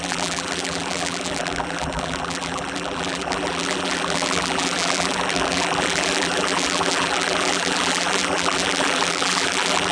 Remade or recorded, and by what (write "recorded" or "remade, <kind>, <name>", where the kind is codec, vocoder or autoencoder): remade, vocoder, BigVGAN v2